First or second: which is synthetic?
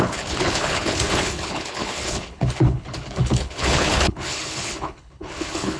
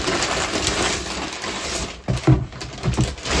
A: first